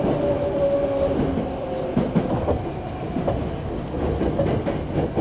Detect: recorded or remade recorded